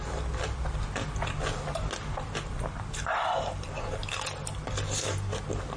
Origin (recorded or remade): recorded